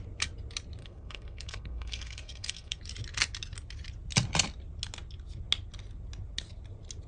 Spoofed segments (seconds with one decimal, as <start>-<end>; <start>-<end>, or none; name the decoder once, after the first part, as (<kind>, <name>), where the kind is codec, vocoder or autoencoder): 0.8-2.8 (codec, SNAC)